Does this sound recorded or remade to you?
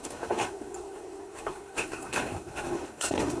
remade